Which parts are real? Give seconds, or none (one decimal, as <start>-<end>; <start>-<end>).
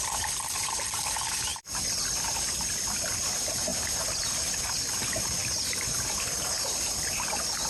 0.0-1.5; 2.7-5.4; 6.0-7.7